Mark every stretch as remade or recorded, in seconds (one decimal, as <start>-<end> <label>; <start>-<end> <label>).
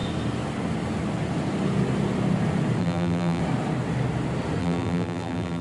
0.0-2.8 recorded; 2.8-3.4 remade; 3.4-4.6 recorded; 4.6-5.6 remade